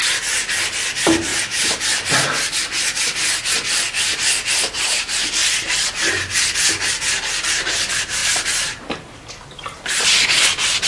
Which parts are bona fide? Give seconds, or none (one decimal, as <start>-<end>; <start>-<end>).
0.0-8.2; 9.3-10.9